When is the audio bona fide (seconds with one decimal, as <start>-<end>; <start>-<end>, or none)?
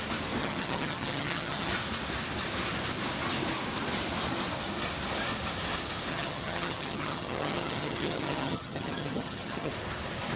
0.0-0.4; 1.7-6.1; 9.7-10.4